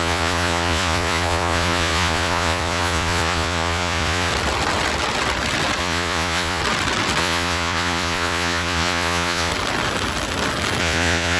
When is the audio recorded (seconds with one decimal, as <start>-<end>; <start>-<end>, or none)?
4.3-5.8; 6.6-7.2; 9.5-10.8